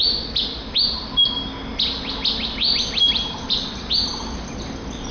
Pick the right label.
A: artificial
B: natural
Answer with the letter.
B